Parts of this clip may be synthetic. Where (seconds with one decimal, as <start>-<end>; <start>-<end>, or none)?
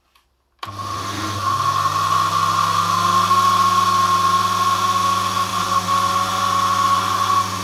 none